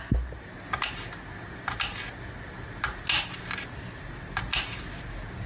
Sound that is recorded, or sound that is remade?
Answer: recorded